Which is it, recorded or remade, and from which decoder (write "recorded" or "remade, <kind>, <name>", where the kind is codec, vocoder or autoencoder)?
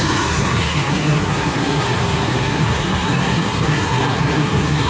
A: remade, codec, SNAC